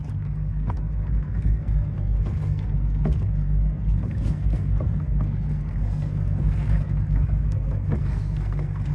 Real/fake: fake